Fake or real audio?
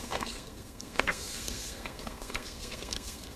fake